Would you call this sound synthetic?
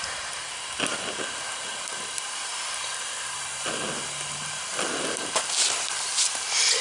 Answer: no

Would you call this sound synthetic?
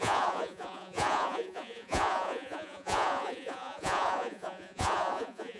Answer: yes